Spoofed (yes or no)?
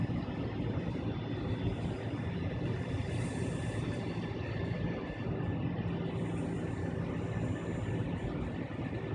no